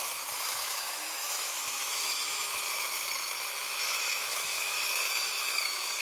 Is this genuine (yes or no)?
no